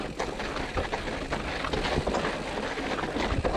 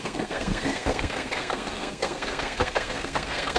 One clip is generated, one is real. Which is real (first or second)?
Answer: first